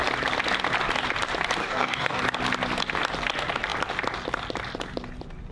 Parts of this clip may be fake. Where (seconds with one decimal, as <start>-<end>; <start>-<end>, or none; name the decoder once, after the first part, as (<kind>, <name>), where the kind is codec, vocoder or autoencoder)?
1.6-2.2 (codec, DAC)